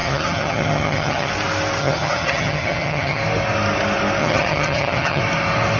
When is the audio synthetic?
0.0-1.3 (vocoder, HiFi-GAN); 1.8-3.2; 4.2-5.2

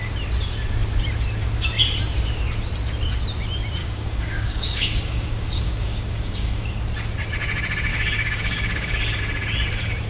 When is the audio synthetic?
3.8-6.8 (codec, DAC); 7.9-9.2

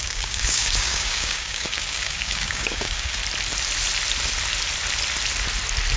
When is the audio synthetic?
0.0-3.2 (codec, DAC)